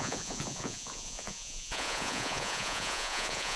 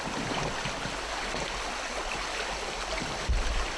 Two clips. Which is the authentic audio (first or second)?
second